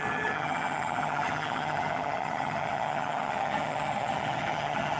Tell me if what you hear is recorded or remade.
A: remade